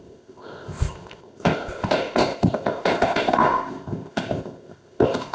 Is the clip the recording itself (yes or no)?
no